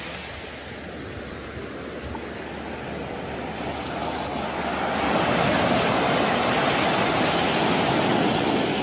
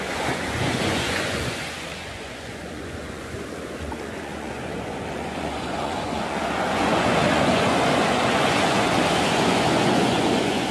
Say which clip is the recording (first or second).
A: first